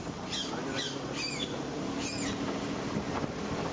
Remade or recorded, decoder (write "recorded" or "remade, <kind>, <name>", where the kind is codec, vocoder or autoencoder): recorded